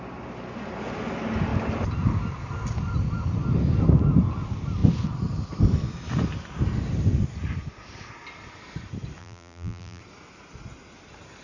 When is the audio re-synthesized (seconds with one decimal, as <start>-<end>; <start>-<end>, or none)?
9.2-10.0